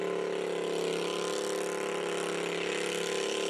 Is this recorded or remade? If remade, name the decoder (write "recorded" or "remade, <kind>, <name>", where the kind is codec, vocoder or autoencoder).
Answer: recorded